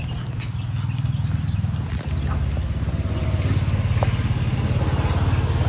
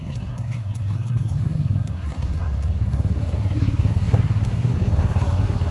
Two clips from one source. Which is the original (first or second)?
first